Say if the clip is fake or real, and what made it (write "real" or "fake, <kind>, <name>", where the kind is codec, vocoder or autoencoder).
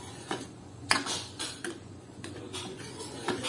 fake, vocoder, Vocos